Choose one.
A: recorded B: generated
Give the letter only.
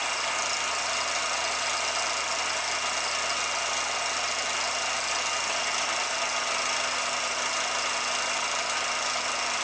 A